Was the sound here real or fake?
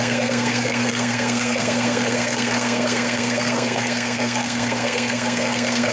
fake